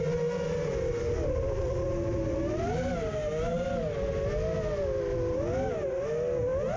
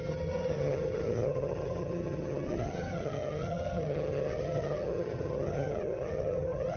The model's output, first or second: second